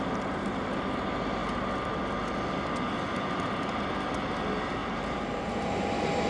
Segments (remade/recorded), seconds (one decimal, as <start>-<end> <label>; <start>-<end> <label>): 0.0-4.8 recorded; 4.8-5.8 remade; 5.8-6.3 recorded